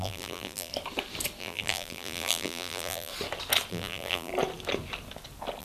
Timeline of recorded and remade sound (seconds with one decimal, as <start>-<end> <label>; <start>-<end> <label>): 0.0-0.7 remade; 0.7-1.4 recorded; 1.4-3.1 remade; 3.1-3.7 recorded; 3.7-4.3 remade; 4.3-5.6 recorded